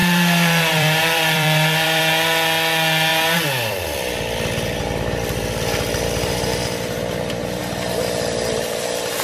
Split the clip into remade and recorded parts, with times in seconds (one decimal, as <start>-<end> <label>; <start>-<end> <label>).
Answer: 0.0-2.0 remade; 2.0-3.1 recorded; 3.1-7.6 remade; 7.6-9.2 recorded

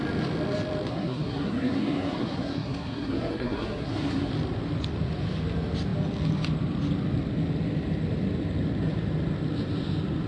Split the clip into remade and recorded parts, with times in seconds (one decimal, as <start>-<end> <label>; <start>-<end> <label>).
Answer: 0.0-0.9 recorded; 0.9-4.3 remade; 4.3-10.3 recorded

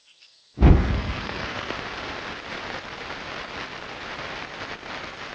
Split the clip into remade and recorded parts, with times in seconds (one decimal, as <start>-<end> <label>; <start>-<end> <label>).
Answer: 0.0-1.7 remade; 1.7-5.3 recorded

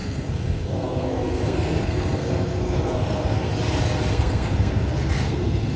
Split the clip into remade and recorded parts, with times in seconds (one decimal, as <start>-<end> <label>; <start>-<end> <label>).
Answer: 0.0-3.5 remade; 3.5-4.1 recorded; 4.1-5.8 remade

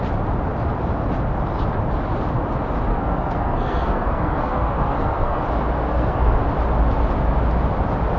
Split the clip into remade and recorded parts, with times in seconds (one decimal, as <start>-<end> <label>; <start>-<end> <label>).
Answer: 0.0-2.9 recorded; 2.9-5.4 remade; 5.4-5.9 recorded; 5.9-6.4 remade; 6.4-8.2 recorded

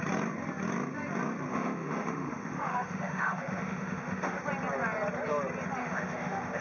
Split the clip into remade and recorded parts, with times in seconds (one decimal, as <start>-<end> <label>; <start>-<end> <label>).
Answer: 0.0-1.5 recorded; 1.5-4.4 remade; 4.4-5.8 recorded; 5.8-6.6 remade

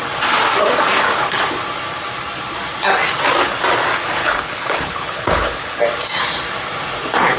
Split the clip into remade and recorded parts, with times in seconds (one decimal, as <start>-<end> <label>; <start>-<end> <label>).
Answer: 0.0-4.2 recorded; 4.2-5.8 remade; 5.8-7.4 recorded